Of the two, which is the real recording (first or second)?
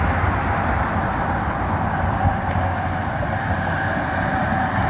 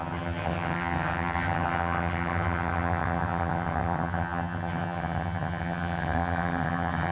first